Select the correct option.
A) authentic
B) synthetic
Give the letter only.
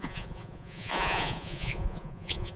B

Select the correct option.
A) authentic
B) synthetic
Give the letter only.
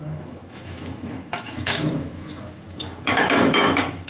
B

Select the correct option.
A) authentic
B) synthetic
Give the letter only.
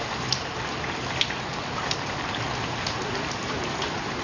A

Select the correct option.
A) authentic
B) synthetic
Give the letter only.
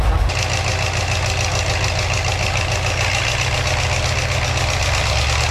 A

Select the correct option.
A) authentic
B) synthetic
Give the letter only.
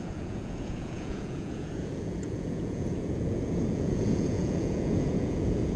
B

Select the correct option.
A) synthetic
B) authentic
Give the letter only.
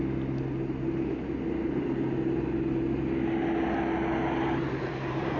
B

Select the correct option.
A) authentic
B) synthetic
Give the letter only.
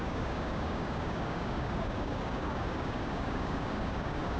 B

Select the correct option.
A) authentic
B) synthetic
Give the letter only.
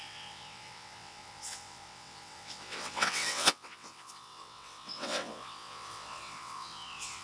B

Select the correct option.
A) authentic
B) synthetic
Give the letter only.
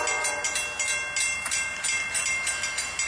A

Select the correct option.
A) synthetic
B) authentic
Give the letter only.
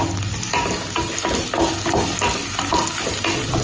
B